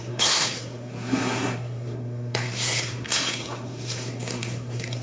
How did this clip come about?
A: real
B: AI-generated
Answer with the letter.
B